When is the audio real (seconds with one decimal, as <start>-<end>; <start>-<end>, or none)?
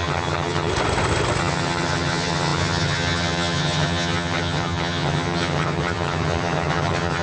0.7-1.4